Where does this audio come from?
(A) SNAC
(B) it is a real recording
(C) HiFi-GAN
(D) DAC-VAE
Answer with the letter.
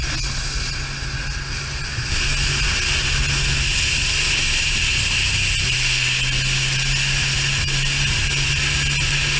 B